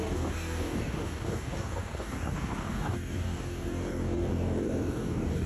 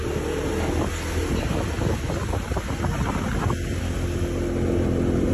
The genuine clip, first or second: second